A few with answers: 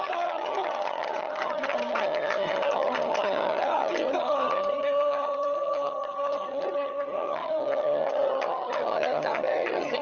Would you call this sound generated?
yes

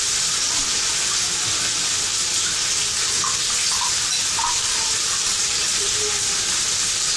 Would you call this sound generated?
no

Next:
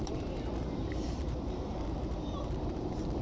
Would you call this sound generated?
yes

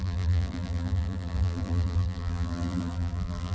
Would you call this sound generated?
yes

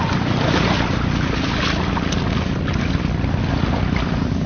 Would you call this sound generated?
no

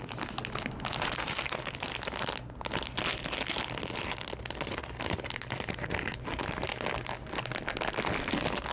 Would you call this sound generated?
no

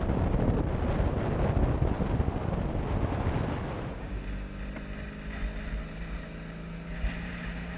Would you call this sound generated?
no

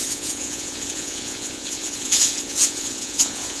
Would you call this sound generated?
yes